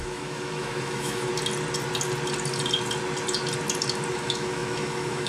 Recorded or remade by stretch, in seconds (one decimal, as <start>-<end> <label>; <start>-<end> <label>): 0.0-1.3 remade; 1.3-4.1 recorded; 4.1-5.3 remade